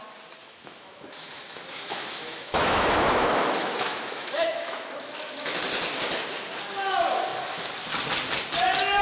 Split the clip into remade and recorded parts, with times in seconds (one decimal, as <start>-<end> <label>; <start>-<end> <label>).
0.0-0.4 recorded; 0.4-5.6 remade; 5.6-9.0 recorded